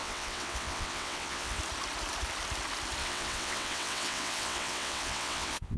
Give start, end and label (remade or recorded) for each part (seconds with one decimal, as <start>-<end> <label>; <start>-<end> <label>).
0.0-1.6 remade; 1.6-3.0 recorded; 3.0-5.8 remade